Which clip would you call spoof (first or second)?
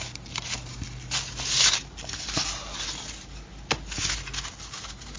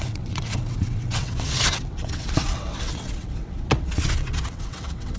second